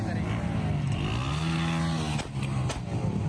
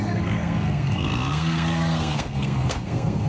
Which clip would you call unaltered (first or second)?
first